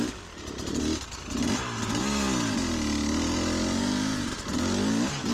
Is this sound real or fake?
real